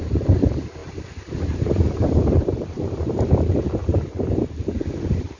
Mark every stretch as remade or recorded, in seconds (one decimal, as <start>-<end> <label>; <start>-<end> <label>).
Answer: 0.0-5.4 remade